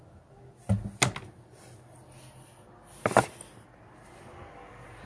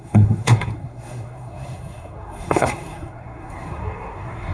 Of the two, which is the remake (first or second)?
second